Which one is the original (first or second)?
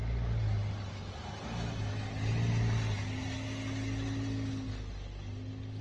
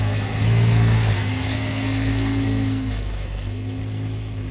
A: first